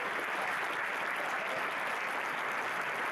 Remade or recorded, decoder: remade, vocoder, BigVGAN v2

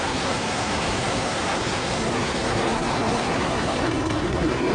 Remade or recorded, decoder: remade, codec, SNAC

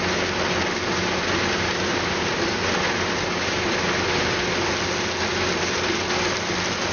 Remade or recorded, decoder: recorded